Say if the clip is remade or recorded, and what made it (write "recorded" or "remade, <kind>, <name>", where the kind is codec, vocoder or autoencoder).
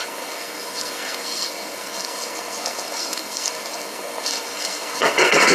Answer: remade, codec, SNAC